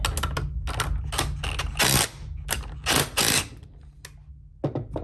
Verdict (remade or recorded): recorded